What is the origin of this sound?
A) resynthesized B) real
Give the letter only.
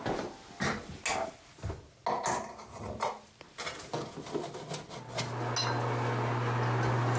B